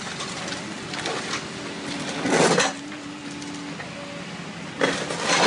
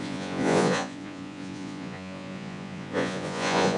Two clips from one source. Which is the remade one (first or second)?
second